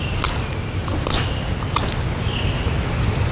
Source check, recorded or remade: recorded